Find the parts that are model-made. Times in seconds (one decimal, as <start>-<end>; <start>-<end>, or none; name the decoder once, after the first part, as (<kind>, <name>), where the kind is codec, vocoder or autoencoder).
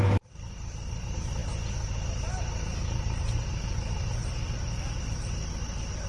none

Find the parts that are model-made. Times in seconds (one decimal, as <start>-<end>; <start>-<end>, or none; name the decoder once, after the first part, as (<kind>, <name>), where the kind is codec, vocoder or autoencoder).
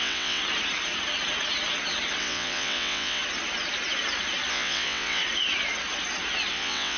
0.0-0.4 (vocoder, WaveNeXt); 2.2-3.2; 4.5-5.2; 6.5-7.0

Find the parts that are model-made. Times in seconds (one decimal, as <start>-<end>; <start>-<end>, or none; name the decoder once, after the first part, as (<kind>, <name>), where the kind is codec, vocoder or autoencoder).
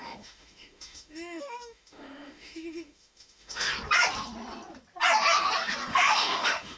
0.0-3.7 (autoencoder, DAC-VAE); 5.9-6.8